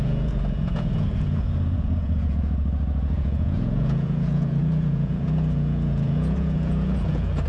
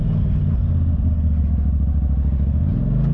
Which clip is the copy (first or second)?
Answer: first